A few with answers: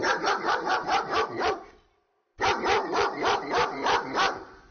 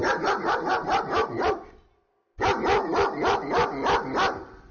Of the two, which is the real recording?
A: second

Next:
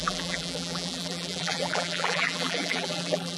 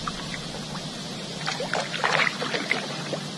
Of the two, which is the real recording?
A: second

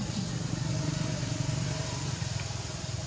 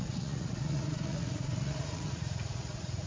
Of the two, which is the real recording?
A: first